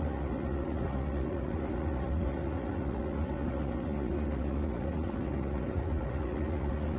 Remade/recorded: remade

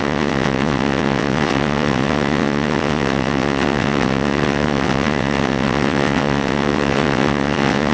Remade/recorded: remade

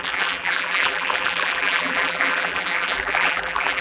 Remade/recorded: remade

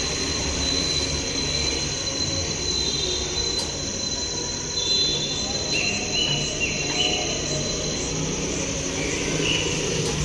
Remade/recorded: recorded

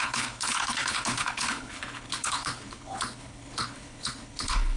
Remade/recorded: remade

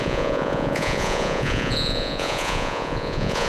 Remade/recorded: remade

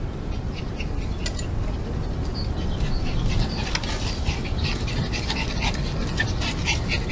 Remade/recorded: recorded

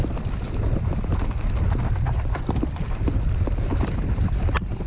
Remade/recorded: recorded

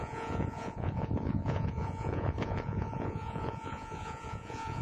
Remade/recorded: remade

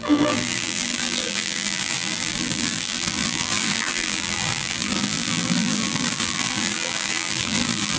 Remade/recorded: remade